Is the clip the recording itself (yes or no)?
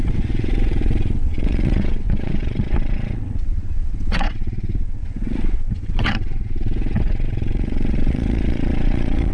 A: no